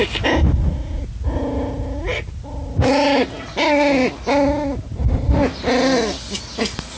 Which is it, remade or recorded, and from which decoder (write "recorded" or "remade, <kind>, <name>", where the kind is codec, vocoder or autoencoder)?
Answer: recorded